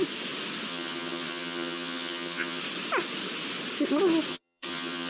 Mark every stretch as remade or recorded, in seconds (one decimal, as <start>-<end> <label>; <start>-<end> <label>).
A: 0.0-0.7 recorded; 0.7-2.6 remade; 2.6-4.3 recorded; 4.3-5.1 remade

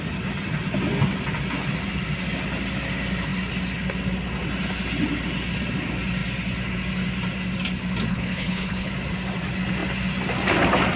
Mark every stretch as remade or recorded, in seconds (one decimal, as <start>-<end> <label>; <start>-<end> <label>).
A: 0.0-8.1 recorded; 8.1-8.9 remade; 8.9-11.0 recorded